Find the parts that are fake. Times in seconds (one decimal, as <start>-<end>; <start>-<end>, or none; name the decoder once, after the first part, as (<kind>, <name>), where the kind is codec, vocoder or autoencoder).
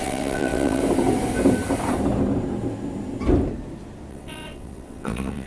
0.0-0.8 (vocoder, WaveNeXt); 4.1-5.5